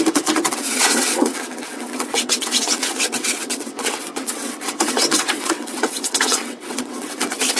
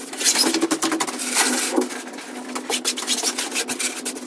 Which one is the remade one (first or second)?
first